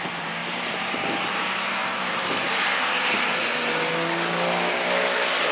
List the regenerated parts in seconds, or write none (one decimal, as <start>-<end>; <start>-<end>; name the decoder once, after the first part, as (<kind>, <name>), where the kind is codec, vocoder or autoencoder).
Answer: 0.4-1.3 (vocoder, BigVGAN v2); 1.8-3.6